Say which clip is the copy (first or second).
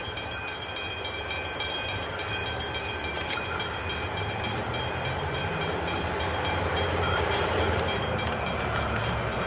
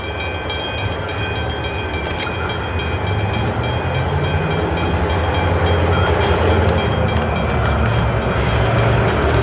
first